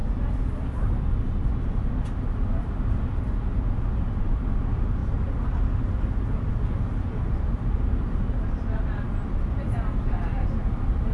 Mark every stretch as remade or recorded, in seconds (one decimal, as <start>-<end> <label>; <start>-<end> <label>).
0.0-11.1 recorded